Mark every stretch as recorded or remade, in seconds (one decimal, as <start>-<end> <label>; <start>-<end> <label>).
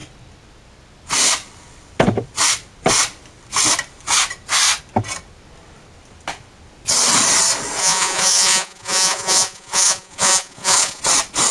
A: 0.0-7.8 recorded; 7.8-11.0 remade; 11.0-11.5 recorded